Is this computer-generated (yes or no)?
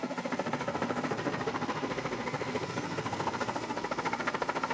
yes